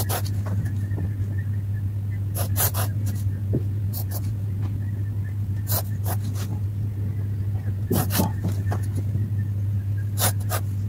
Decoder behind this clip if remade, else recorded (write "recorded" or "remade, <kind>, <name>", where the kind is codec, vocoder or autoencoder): recorded